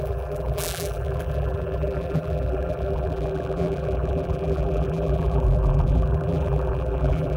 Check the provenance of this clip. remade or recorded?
remade